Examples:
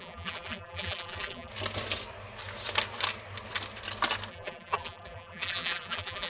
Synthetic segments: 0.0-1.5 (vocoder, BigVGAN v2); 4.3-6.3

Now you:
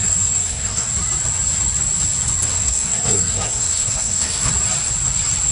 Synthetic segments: 0.0-0.9 (codec, SNAC); 2.5-4.5

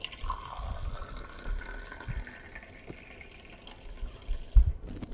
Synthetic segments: none